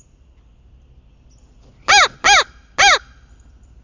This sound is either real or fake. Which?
real